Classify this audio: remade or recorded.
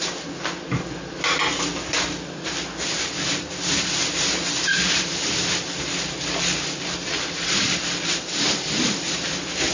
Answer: recorded